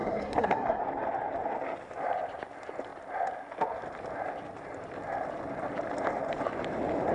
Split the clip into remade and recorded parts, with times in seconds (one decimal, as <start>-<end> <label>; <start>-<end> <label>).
0.0-0.8 remade; 0.8-7.1 recorded